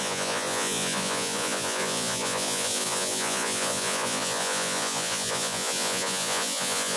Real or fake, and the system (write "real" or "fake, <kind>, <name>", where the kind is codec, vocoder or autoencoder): fake, vocoder, Vocos